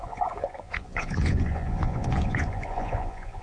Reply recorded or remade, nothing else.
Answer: remade